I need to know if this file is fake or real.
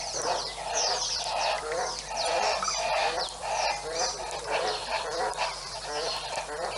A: fake